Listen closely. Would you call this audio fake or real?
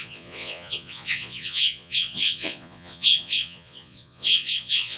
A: fake